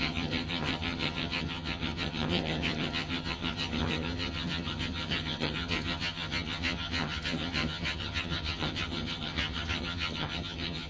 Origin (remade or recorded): remade